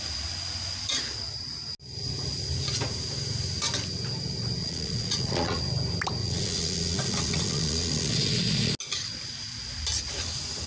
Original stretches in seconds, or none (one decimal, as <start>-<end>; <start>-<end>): 0.0-4.6; 5.6-6.2; 8.7-10.7